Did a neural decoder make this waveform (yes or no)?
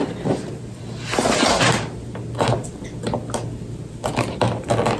no